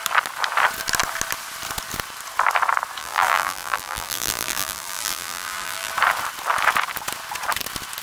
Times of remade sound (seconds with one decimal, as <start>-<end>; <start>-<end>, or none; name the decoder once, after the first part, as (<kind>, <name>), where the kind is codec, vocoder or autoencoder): 3.0-5.9 (vocoder, BigVGAN v2)